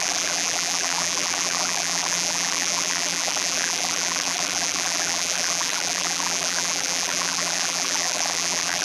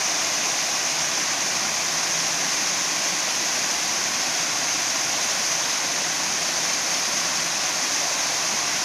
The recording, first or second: second